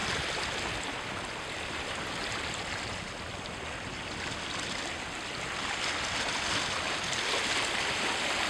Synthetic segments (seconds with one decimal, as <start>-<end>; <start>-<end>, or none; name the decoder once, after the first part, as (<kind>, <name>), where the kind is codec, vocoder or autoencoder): none